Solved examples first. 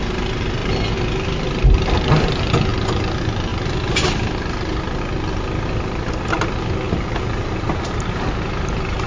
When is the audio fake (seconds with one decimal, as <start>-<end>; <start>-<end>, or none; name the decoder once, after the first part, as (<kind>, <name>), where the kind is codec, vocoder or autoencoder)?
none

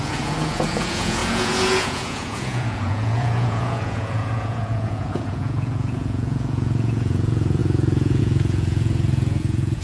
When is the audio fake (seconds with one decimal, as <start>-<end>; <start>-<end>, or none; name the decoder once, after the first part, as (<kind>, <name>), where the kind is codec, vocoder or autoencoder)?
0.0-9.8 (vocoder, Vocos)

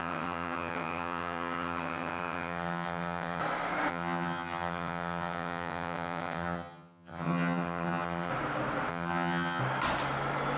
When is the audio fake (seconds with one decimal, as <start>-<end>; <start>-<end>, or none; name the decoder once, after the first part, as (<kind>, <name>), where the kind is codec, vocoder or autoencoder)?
0.0-3.4 (vocoder, HiFi-GAN); 3.9-8.3; 8.9-9.6

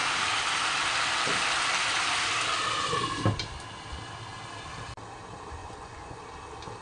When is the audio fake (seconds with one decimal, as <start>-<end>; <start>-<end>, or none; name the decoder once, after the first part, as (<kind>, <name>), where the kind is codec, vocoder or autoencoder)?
5.6-6.2 (vocoder, Vocos)

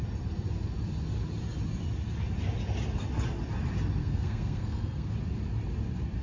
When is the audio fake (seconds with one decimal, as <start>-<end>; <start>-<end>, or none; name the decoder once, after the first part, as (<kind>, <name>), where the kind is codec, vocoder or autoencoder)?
4.0-5.1 (codec, SNAC)

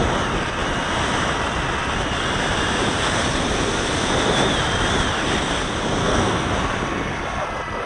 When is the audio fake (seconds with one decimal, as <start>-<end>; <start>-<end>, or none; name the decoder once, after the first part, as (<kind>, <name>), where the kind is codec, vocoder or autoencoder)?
6.0-6.5 (codec, SNAC)